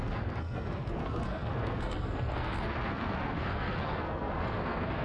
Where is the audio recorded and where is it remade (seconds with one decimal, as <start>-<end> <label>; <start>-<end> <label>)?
0.0-5.0 remade